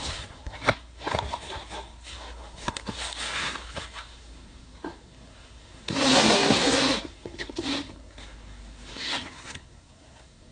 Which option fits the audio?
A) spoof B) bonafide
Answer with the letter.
A